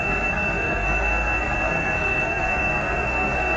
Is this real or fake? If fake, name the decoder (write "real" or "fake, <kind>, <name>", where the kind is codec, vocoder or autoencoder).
fake, codec, SNAC